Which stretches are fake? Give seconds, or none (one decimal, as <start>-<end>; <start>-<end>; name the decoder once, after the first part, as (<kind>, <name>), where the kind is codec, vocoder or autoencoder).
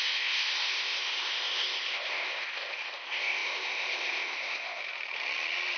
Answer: 0.0-4.8 (codec, ZipCodec)